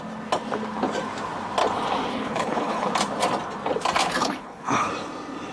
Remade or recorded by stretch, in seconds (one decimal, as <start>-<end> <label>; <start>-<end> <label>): 0.0-2.1 recorded; 2.1-2.9 remade; 2.9-4.2 recorded; 4.2-4.9 remade; 4.9-5.5 recorded